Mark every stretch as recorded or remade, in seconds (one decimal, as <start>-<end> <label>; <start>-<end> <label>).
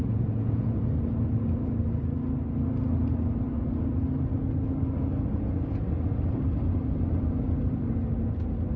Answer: 0.0-0.8 remade; 0.8-8.8 recorded